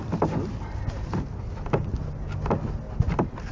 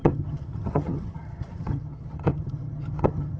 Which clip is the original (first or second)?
first